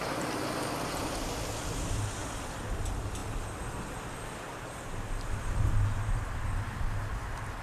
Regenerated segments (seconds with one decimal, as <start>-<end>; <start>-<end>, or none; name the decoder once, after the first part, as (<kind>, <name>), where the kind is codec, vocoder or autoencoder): 2.2-2.8 (vocoder, BigVGAN v2)